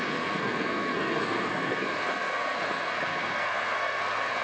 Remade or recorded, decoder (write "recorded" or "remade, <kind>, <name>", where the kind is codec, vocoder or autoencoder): remade, codec, SNAC